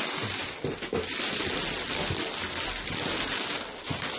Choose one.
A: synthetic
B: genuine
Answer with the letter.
B